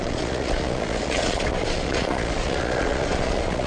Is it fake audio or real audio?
fake